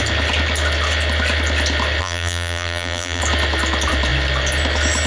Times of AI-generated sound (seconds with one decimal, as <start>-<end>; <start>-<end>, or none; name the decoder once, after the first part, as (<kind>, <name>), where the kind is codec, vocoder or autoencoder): 2.0-3.2 (vocoder, BigVGAN v2)